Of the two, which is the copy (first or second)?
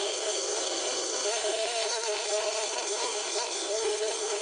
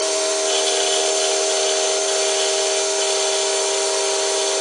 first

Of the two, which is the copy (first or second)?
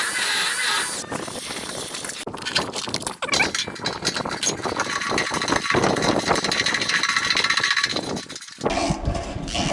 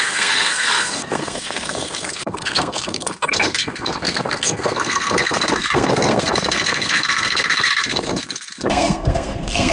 second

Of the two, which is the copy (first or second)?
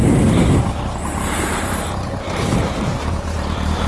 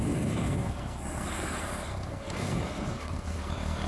second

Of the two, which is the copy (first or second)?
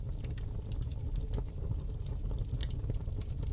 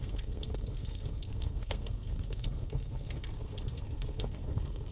second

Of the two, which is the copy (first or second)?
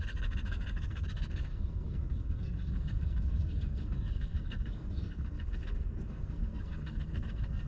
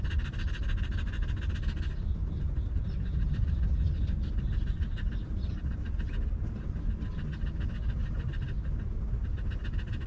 first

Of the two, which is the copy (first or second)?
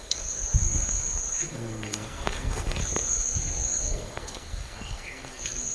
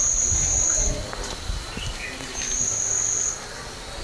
first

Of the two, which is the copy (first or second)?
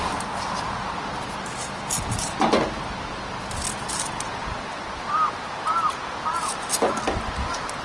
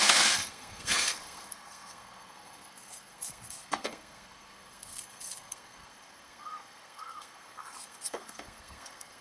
second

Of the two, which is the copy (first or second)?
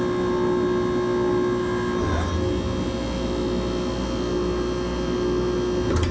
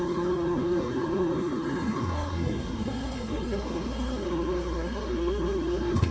second